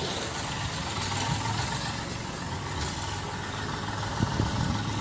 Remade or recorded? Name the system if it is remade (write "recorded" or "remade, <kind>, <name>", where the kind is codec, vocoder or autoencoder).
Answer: recorded